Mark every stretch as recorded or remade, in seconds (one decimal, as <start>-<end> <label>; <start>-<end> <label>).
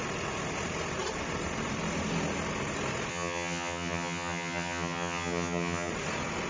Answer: 0.0-3.1 recorded; 3.1-5.9 remade; 5.9-6.5 recorded